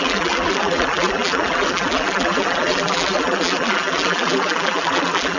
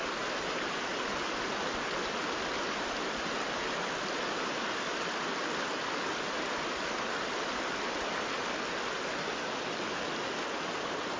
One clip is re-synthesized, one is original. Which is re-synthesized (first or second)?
first